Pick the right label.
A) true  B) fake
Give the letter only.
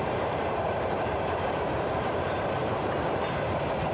B